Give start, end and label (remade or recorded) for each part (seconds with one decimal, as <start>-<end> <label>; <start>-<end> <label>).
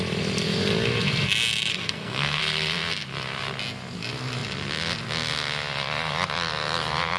0.0-1.7 recorded; 1.7-2.4 remade; 2.4-7.2 recorded